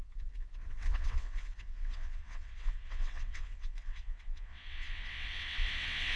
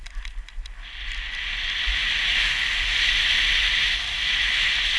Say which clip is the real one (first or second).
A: second